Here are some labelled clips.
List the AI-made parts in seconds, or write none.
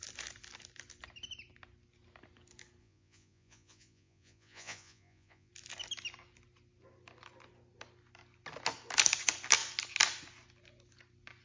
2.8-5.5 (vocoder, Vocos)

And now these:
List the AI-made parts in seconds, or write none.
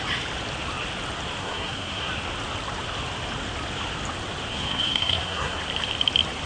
1.4-2.1 (codec, SNAC); 4.5-5.6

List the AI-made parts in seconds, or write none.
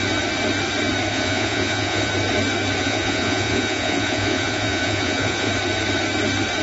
1.1-2.1 (vocoder, Vocos); 2.8-5.5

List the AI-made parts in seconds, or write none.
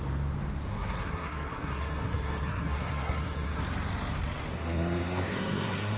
0.7-3.6 (codec, SNAC); 4.5-6.0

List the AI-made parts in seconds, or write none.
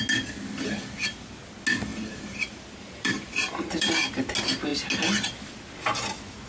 1.9-3.9 (vocoder, BigVGAN v2)